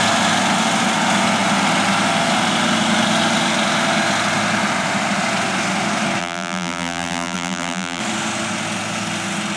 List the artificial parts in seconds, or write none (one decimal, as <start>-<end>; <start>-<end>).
6.2-8.0